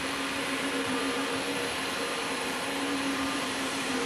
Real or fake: fake